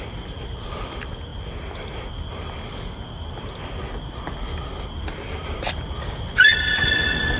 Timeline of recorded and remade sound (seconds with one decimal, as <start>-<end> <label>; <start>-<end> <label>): 0.0-7.4 recorded